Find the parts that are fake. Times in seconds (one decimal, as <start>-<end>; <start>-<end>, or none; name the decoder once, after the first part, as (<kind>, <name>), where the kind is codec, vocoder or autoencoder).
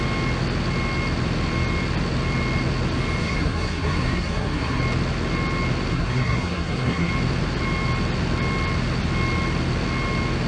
3.2-4.8 (codec, SNAC); 5.9-7.1